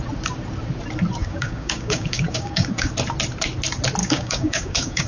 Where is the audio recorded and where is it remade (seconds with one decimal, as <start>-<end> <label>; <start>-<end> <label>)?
0.0-1.2 recorded; 1.2-2.9 remade; 2.9-4.0 recorded; 4.0-5.1 remade